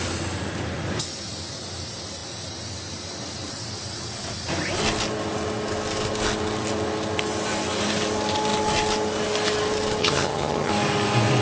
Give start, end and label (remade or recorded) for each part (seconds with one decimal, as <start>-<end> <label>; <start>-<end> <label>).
0.0-10.0 recorded; 10.0-10.7 remade; 10.7-11.4 recorded